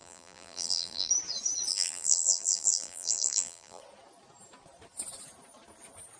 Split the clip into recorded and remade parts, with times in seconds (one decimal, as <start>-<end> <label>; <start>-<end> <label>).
0.0-1.1 remade; 1.1-1.7 recorded; 1.7-3.8 remade; 3.8-6.2 recorded